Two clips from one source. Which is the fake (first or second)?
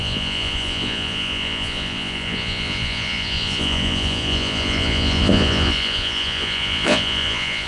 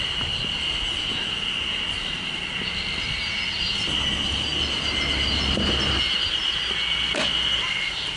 first